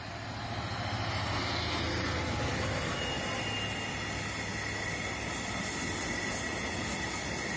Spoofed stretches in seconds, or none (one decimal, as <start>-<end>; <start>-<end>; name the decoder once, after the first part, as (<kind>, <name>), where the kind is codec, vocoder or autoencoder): none